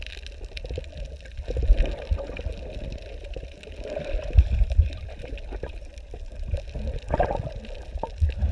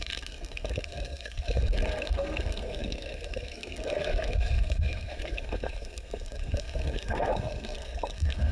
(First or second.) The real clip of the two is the first